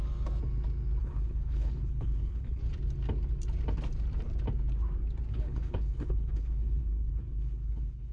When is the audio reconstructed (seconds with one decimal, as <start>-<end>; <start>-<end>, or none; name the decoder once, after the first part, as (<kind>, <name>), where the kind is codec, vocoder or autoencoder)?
1.0-2.6 (codec, HILCodec); 5.3-8.1